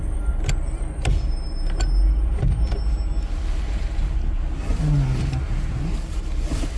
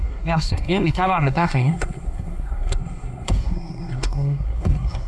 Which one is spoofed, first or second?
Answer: second